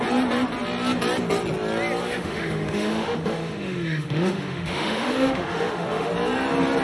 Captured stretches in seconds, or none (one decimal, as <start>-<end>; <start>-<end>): 0.0-2.0; 6.1-6.8